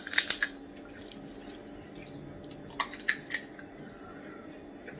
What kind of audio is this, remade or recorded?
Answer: recorded